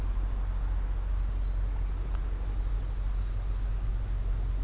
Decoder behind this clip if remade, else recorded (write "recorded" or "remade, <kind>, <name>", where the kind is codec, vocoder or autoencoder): recorded